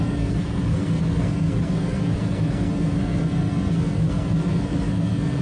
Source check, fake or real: fake